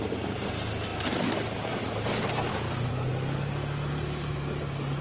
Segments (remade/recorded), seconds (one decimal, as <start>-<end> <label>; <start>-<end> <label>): 0.0-3.1 remade; 3.1-3.9 recorded; 3.9-5.0 remade